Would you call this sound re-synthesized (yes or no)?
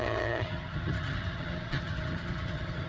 yes